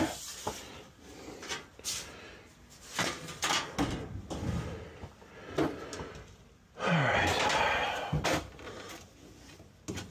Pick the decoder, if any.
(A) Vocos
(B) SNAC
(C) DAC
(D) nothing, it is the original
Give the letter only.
D